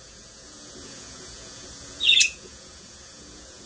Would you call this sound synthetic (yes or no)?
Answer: yes